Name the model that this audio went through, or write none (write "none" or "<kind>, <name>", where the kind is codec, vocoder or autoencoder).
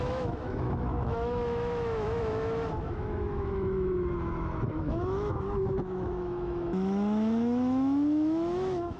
autoencoder, DAC-VAE